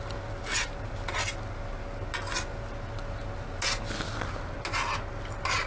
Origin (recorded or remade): recorded